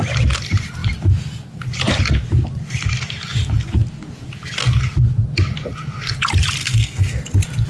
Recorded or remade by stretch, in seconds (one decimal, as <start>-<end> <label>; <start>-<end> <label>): 0.0-6.6 recorded; 6.6-7.1 remade; 7.1-7.7 recorded